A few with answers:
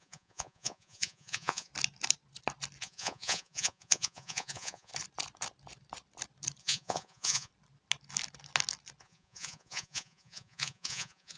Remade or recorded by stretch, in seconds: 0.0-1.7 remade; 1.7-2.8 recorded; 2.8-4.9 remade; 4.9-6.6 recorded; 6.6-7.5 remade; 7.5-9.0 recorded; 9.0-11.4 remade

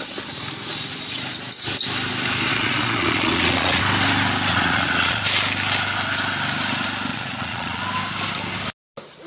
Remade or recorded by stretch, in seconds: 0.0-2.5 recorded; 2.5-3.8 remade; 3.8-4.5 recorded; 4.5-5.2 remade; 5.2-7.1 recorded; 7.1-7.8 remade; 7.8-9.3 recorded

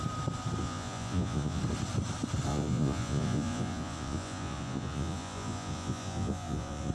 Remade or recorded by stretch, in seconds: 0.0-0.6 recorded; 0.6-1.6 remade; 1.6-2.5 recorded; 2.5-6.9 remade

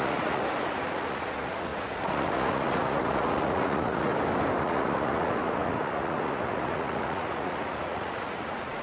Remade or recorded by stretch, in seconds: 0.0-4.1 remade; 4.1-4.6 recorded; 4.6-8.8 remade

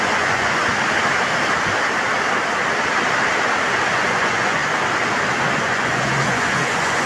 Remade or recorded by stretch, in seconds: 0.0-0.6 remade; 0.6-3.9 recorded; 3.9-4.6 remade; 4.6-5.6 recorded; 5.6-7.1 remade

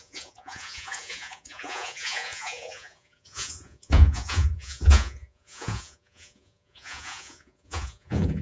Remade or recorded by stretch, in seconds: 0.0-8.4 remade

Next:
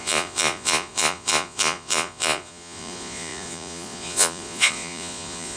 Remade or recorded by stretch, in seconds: 0.0-5.6 remade

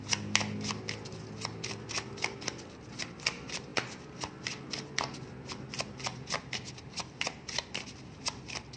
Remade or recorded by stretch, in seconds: 0.0-8.8 recorded